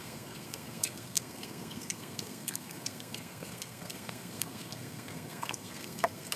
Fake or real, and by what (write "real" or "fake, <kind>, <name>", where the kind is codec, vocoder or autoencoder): fake, codec, SNAC